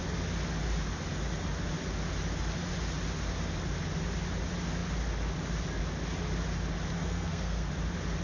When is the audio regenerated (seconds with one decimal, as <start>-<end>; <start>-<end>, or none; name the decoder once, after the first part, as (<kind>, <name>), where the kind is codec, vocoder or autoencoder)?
7.0-7.7 (codec, SNAC)